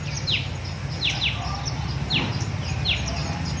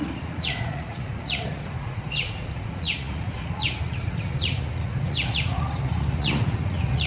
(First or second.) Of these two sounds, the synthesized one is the second